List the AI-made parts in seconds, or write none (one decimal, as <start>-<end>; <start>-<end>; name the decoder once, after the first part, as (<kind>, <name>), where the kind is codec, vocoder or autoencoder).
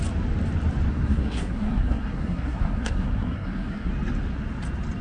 0.9-3.9 (codec, SNAC)